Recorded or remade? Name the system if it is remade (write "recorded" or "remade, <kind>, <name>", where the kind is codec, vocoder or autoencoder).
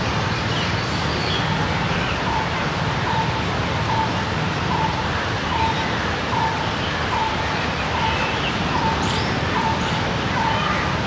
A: recorded